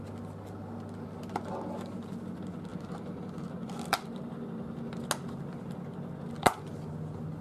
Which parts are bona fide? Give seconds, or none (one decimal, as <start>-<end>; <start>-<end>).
0.0-2.7; 4.8-7.4